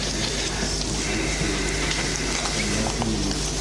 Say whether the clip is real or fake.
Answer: real